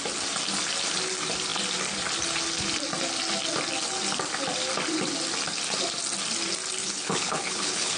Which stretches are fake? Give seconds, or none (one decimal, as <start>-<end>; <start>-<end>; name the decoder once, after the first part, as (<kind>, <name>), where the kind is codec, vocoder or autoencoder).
6.8-8.0 (codec, HILCodec)